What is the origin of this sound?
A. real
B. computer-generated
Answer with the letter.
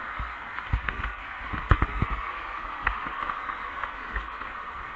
B